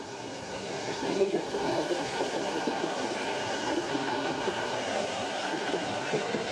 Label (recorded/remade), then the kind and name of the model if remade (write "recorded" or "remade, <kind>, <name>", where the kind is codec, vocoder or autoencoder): remade, codec, SNAC